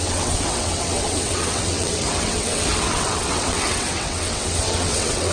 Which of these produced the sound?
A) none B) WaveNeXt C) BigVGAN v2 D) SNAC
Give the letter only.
B